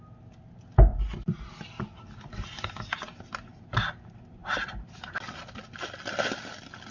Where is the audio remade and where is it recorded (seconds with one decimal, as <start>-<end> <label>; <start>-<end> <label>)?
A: 0.0-4.4 recorded; 4.4-5.0 remade; 5.0-6.9 recorded